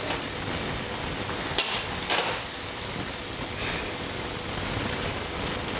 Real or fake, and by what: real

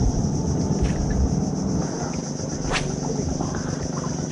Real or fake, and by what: real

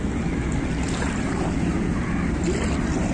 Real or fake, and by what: real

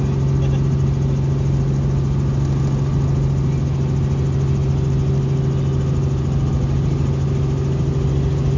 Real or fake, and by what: real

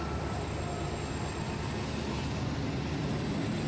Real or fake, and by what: real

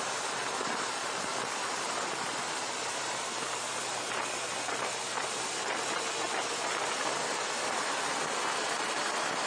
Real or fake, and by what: real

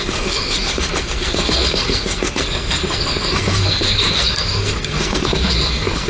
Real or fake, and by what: fake, codec, SNAC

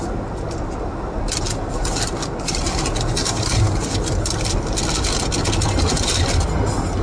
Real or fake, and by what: real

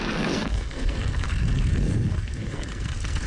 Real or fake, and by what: fake, codec, SNAC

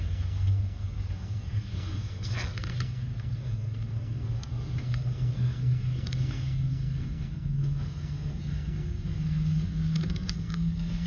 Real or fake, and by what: fake, codec, SNAC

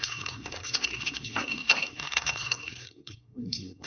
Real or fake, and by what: fake, codec, SNAC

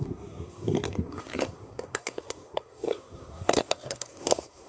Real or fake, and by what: fake, codec, SNAC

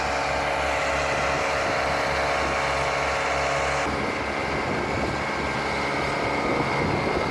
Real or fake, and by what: real